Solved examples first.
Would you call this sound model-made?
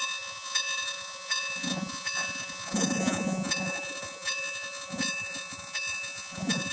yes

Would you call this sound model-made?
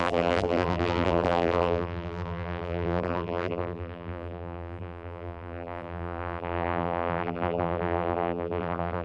yes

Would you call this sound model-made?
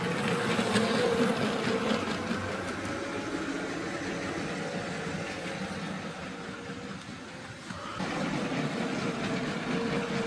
no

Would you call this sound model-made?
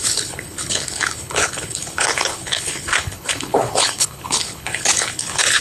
yes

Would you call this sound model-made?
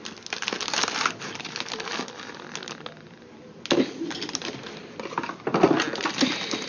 no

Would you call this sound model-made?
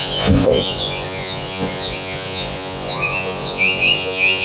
yes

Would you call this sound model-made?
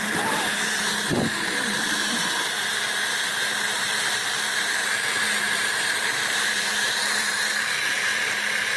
yes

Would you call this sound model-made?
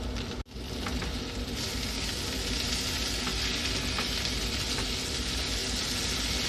no